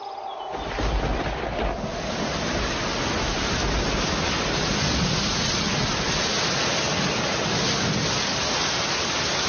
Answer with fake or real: real